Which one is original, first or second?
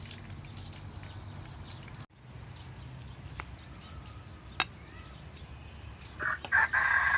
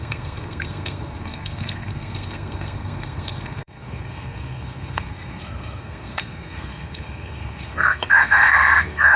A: first